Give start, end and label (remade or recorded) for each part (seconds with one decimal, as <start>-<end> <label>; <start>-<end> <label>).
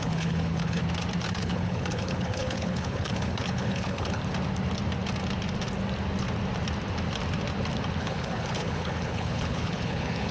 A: 0.0-0.8 remade; 0.8-1.3 recorded; 1.3-4.2 remade; 4.2-8.0 recorded; 8.0-10.3 remade